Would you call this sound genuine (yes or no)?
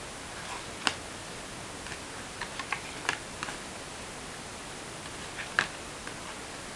yes